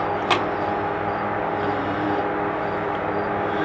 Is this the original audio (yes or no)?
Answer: yes